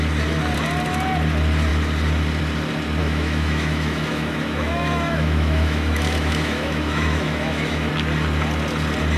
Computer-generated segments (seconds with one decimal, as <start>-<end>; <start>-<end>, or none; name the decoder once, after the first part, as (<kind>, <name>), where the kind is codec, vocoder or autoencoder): 3.0-7.9 (autoencoder, DAC-VAE)